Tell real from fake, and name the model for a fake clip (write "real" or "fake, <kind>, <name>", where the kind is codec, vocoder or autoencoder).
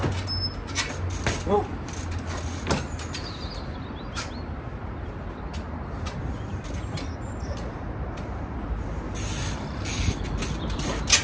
real